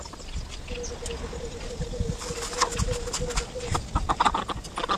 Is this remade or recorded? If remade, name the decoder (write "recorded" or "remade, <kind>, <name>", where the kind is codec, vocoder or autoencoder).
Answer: recorded